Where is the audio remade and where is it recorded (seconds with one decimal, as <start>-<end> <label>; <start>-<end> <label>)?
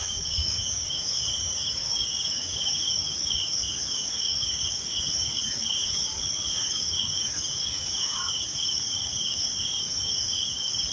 0.0-10.9 remade